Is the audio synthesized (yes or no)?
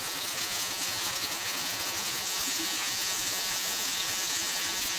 yes